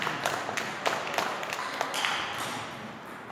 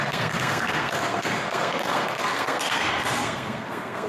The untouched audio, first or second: first